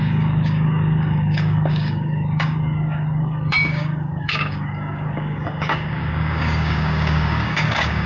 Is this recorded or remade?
remade